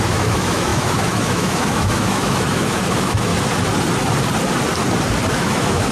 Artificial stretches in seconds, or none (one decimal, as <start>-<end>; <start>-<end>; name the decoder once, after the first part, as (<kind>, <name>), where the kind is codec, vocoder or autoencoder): 0.0-3.3 (autoencoder, DAC-VAE); 5.3-5.9